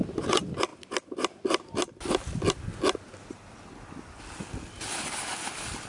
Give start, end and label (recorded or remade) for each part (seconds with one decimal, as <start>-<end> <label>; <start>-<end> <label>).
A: 0.0-5.9 recorded